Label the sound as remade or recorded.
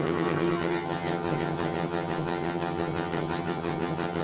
remade